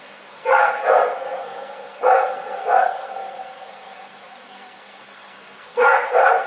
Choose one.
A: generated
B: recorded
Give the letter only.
A